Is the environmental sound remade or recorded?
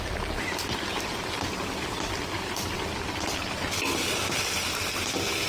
remade